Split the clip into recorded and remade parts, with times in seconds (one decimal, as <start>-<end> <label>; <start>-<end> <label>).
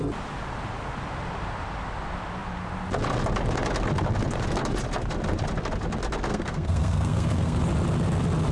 0.0-6.3 recorded; 6.3-7.6 remade; 7.6-8.5 recorded